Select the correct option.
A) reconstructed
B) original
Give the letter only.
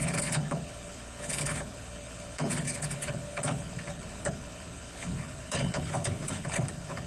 A